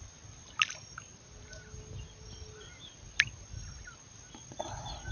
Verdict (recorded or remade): recorded